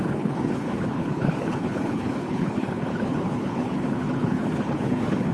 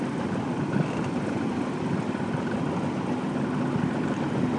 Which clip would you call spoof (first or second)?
first